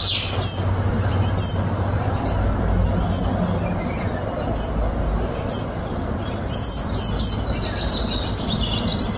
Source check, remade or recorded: recorded